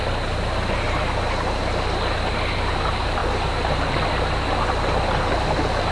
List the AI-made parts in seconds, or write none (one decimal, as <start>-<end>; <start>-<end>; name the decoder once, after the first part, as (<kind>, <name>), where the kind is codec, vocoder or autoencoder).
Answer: none